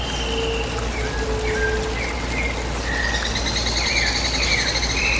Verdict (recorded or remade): recorded